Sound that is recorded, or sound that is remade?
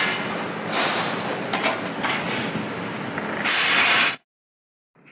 recorded